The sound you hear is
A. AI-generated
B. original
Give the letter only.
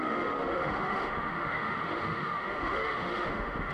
A